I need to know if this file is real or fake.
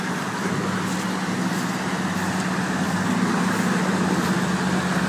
real